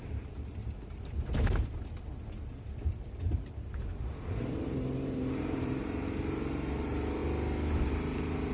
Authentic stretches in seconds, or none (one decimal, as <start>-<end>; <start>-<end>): 0.6-4.2; 7.2-7.9